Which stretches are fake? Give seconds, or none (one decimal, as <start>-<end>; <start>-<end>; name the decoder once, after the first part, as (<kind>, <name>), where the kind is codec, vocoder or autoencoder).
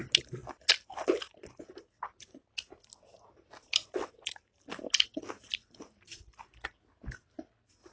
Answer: none